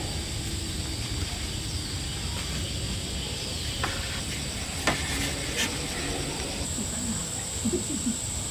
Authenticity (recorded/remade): recorded